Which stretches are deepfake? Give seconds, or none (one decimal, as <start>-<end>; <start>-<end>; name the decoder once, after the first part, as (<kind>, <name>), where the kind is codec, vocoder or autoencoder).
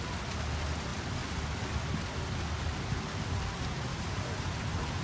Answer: 3.9-5.0 (vocoder, BigVGAN v2)